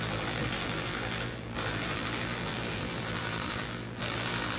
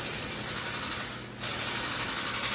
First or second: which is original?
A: second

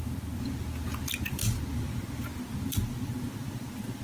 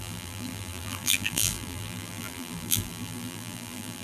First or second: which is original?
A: first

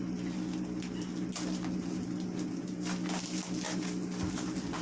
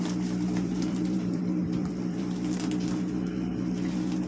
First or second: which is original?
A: first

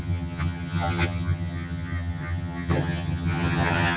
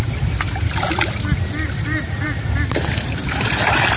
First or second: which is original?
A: second